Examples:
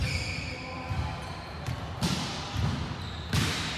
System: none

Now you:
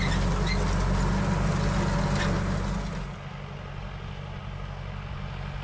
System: none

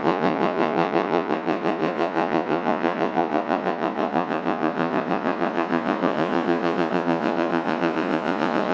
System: vocoder, Vocos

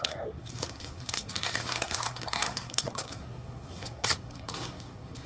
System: codec, SNAC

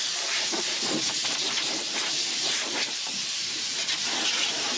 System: vocoder, BigVGAN v2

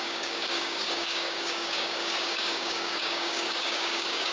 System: codec, DAC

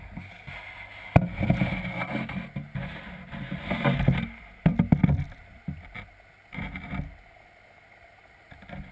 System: none